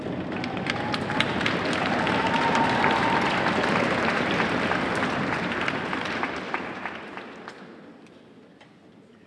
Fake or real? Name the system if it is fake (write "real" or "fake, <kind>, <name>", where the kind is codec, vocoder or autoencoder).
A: real